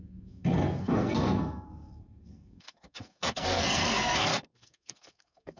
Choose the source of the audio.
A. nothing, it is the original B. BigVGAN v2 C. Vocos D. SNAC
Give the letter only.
D